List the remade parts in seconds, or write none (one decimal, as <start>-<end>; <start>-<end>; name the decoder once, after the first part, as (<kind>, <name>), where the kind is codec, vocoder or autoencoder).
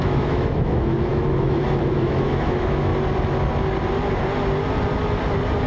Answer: 0.0-2.9 (autoencoder, DAC-VAE)